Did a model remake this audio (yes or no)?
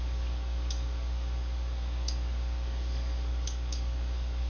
yes